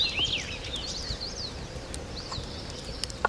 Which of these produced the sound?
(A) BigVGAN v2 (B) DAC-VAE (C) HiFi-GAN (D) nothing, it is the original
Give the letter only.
D